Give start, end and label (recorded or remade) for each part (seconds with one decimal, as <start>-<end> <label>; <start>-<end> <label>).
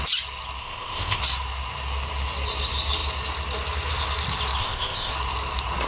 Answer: 0.0-0.6 recorded; 0.6-1.2 remade; 1.2-4.6 recorded; 4.6-5.1 remade; 5.1-5.9 recorded